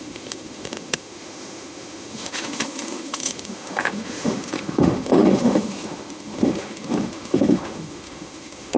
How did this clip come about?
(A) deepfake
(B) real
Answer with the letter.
A